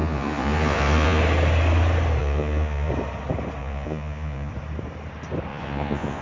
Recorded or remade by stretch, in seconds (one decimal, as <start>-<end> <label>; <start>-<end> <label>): 0.0-1.2 remade; 1.2-2.2 recorded; 2.2-2.9 remade; 2.9-3.6 recorded; 3.6-4.5 remade; 4.5-5.5 recorded; 5.5-6.2 remade